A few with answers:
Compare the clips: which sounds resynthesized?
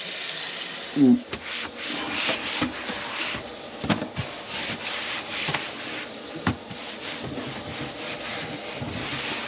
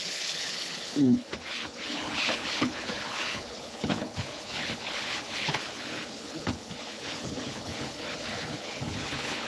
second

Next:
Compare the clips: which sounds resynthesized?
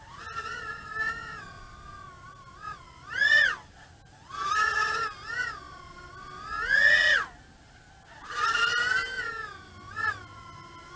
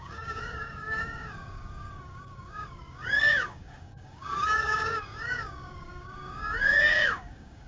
second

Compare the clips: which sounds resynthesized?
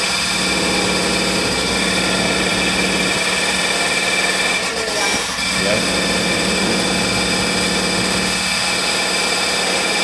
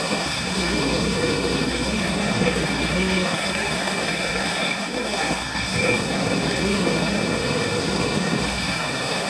second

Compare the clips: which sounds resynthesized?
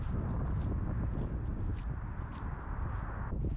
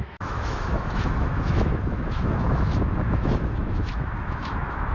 second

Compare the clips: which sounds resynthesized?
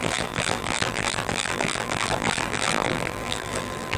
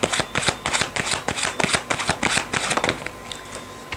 first